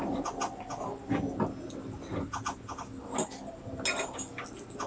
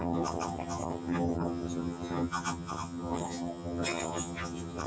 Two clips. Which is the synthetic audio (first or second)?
second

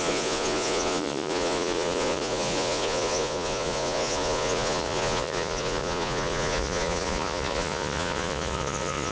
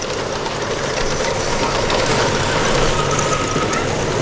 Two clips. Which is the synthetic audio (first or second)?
first